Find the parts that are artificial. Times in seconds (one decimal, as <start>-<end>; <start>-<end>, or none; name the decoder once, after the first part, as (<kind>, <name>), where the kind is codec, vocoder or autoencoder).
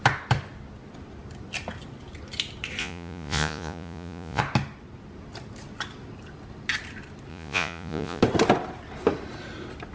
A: 2.8-4.4 (vocoder, Vocos); 7.3-8.2